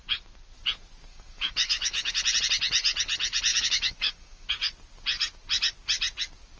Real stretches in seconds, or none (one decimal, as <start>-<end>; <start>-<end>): 0.0-1.1; 2.1-3.5; 4.5-6.6